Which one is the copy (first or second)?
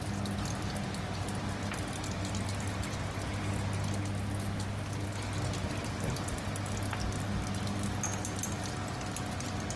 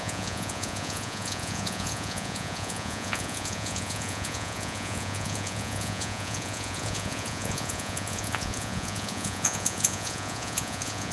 second